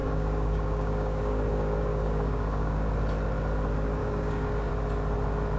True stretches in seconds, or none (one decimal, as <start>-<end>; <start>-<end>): 2.9-4.0; 4.7-5.6